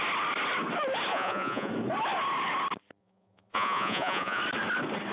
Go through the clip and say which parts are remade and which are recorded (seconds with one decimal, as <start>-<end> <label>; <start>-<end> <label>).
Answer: 0.0-1.1 recorded; 1.1-1.7 remade; 1.7-3.0 recorded; 3.0-4.4 remade; 4.4-5.1 recorded